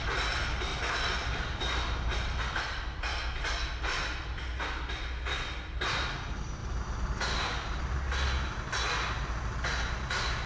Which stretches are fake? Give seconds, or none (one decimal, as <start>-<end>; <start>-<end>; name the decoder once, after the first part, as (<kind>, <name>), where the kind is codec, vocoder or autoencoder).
none